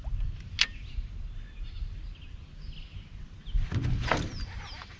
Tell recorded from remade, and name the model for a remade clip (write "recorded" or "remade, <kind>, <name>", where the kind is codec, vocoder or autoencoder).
recorded